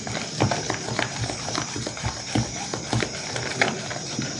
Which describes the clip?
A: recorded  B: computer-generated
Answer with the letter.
B